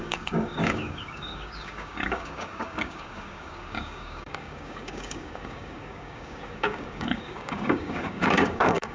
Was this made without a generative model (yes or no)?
no